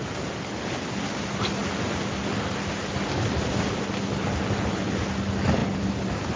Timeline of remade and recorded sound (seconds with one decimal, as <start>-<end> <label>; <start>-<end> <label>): 0.0-6.4 recorded